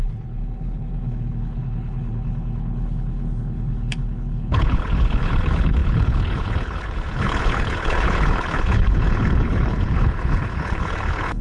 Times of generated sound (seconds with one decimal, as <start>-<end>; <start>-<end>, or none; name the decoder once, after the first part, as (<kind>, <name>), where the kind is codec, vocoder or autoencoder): 0.0-11.4 (codec, HILCodec)